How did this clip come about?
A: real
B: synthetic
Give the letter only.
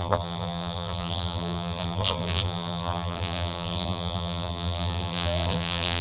B